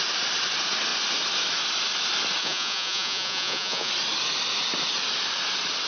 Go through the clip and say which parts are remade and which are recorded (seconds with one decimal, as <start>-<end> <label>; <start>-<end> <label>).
0.0-2.4 recorded; 2.4-3.9 remade; 3.9-5.9 recorded